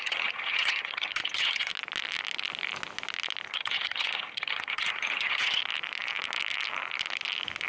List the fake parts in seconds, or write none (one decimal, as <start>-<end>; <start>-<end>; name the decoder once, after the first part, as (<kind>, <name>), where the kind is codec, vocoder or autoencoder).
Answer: 0.0-1.7 (vocoder, HiFi-GAN); 3.5-5.6